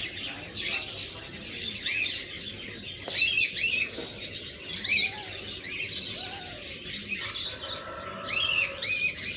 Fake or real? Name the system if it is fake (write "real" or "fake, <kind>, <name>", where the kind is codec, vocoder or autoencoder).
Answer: real